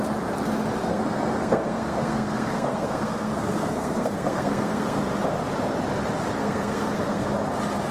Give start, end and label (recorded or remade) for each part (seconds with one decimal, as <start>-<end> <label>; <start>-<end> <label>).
0.0-0.8 recorded; 0.8-5.0 remade; 5.0-6.4 recorded; 6.4-7.3 remade; 7.3-7.9 recorded